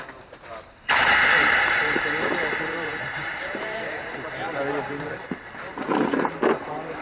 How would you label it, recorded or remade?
remade